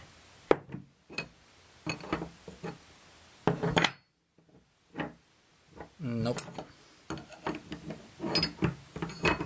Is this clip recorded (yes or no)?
yes